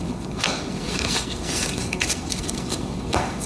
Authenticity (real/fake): fake